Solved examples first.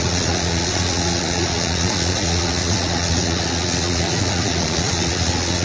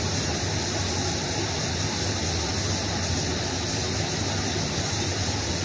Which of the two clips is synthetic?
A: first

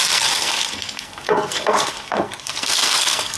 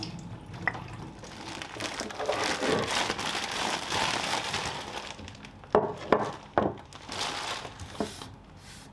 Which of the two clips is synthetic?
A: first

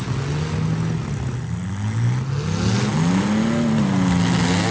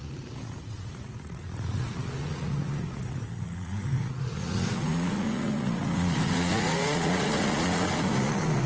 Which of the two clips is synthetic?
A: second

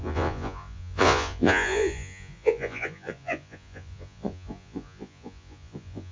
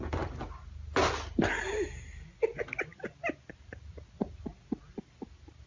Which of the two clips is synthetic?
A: first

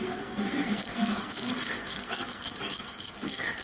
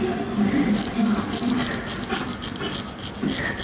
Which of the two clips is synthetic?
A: first